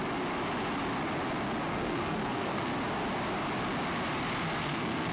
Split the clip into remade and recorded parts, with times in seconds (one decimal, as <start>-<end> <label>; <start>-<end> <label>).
0.0-1.7 recorded; 1.7-2.7 remade; 2.7-4.6 recorded; 4.6-5.1 remade